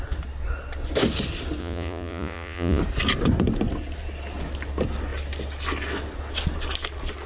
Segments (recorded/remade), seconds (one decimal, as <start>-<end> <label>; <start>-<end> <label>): 0.0-1.6 recorded; 1.6-2.8 remade; 2.8-7.3 recorded